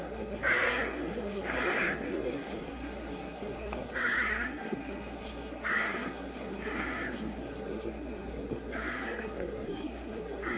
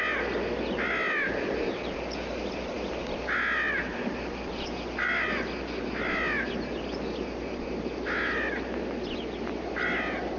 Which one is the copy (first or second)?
first